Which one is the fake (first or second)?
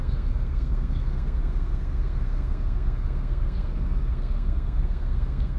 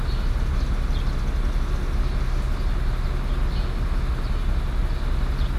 first